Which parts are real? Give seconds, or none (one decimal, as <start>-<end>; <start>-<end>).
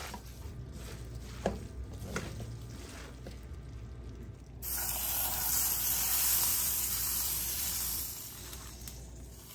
3.0-6.5; 8.0-9.5